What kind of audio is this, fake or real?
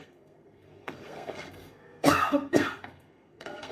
fake